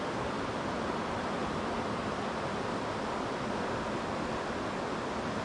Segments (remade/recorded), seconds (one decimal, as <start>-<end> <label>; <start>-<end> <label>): 0.0-5.4 recorded